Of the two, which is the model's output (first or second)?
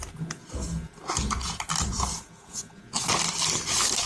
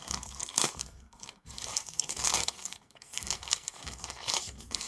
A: second